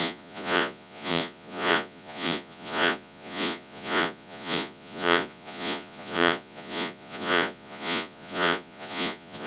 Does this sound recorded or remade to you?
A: remade